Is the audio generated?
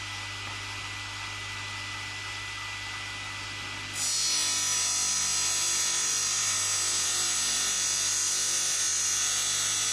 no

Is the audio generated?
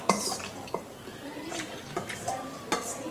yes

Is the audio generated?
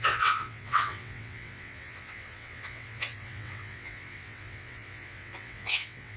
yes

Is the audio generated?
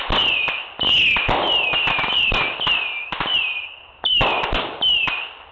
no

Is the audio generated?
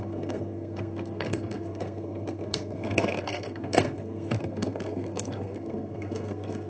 yes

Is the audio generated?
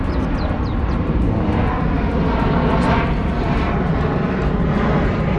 no